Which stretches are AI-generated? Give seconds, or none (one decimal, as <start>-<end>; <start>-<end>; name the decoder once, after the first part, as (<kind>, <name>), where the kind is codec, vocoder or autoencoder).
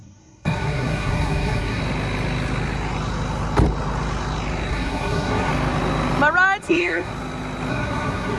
0.0-1.8 (codec, SNAC); 4.7-5.5; 6.6-7.1; 7.7-8.4